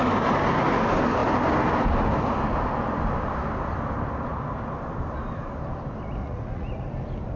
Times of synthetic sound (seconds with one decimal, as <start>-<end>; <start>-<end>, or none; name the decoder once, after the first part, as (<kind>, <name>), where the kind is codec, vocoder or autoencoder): 6.2-6.9 (vocoder, Vocos)

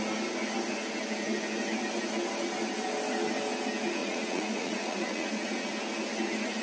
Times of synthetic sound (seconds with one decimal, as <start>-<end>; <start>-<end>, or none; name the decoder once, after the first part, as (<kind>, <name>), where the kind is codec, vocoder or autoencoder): 4.0-5.7 (vocoder, Vocos)

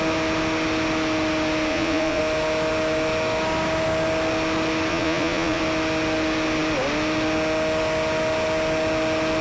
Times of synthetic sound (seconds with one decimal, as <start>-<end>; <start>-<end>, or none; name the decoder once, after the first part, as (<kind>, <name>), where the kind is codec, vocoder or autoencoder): 1.7-2.2 (vocoder, Vocos); 4.9-5.6

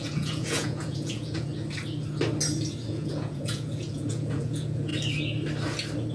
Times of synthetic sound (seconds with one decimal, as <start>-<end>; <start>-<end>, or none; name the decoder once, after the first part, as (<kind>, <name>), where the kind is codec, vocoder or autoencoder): 0.0-1.5 (vocoder, Vocos); 2.9-4.9

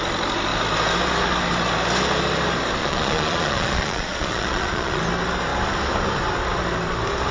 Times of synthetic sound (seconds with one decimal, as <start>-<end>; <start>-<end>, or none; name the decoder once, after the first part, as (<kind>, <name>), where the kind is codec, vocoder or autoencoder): 2.8-5.0 (vocoder, Vocos)

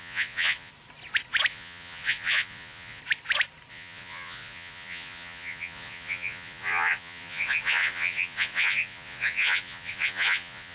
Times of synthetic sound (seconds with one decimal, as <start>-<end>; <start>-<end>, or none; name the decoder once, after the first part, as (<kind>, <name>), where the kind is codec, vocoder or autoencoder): 0.0-0.7 (vocoder, Vocos); 1.5-3.0; 3.7-10.7

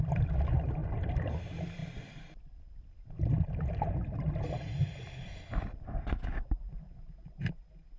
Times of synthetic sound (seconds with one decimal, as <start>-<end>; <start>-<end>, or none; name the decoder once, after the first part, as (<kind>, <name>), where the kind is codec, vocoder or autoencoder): none

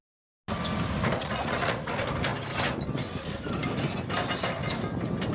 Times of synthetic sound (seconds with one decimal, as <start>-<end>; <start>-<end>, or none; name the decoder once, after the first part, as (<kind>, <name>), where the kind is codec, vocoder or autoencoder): 1.2-1.9 (vocoder, Vocos)